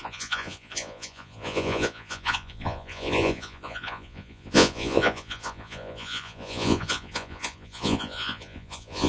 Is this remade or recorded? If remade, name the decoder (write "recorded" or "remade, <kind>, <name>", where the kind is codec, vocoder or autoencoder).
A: remade, vocoder, Vocos